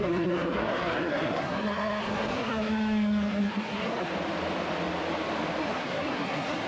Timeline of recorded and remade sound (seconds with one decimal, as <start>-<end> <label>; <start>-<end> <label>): 0.0-4.1 remade; 4.1-5.6 recorded; 5.6-6.7 remade